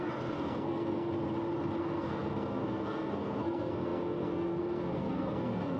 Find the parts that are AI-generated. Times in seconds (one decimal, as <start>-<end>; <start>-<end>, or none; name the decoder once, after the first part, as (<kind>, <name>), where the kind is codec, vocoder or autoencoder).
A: 0.0-1.1 (codec, SNAC); 1.8-5.8